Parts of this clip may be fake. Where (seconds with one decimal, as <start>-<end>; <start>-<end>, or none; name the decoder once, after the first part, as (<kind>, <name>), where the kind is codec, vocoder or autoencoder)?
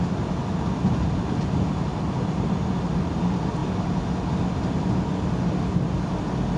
none